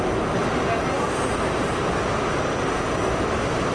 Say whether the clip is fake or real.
real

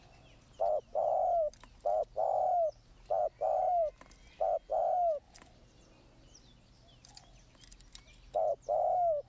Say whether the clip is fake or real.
real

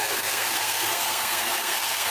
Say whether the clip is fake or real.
fake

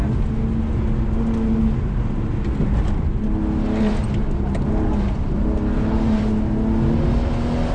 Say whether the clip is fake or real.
real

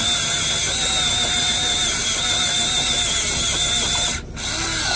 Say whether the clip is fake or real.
real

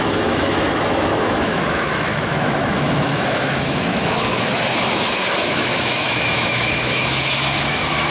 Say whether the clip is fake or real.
fake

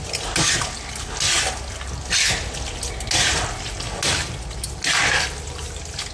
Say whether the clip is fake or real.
real